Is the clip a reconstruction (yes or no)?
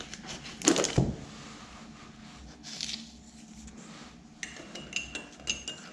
no